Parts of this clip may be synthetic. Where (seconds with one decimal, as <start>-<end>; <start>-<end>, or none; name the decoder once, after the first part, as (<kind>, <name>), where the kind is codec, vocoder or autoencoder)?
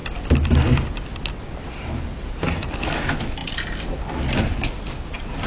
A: none